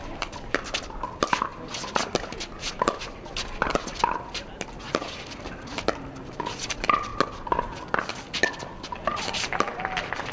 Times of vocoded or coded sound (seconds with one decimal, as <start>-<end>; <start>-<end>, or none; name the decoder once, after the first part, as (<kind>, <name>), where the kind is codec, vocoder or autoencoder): none